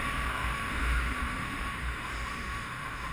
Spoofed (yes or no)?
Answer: yes